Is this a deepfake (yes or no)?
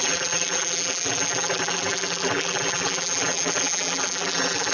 yes